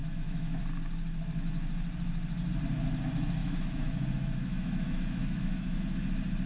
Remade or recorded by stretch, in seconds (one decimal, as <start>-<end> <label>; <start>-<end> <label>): 0.0-0.6 remade; 0.6-3.4 recorded; 3.4-5.8 remade; 5.8-6.5 recorded